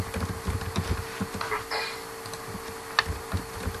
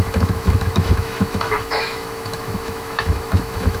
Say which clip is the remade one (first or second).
second